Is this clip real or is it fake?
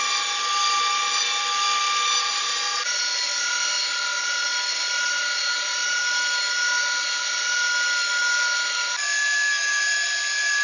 real